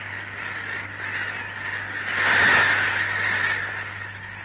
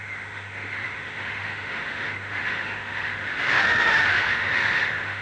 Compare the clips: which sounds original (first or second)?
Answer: first